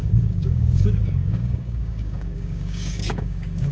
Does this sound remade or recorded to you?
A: remade